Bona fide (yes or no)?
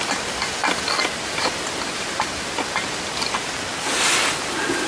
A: yes